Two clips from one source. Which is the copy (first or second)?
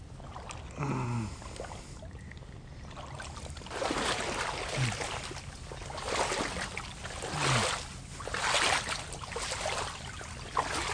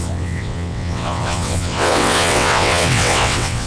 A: second